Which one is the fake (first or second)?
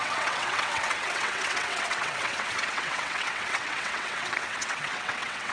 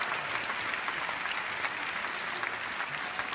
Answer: first